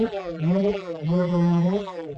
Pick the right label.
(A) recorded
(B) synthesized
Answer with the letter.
B